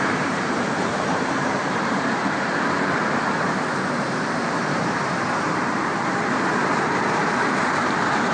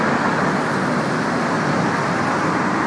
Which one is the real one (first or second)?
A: second